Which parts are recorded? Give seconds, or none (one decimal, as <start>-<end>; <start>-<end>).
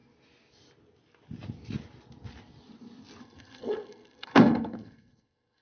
0.0-3.2